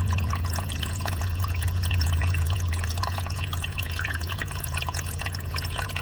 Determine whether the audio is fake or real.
fake